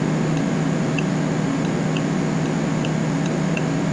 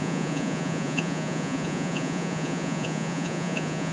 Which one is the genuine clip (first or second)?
first